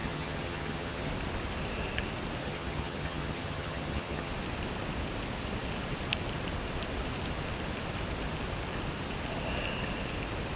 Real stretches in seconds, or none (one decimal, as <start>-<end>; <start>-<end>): 1.1-2.4; 4.3-10.6